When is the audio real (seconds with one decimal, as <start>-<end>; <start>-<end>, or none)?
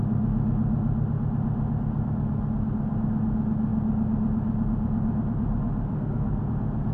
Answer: 0.0-5.9; 6.4-6.9